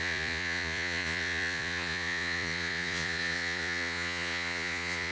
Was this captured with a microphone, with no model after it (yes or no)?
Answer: no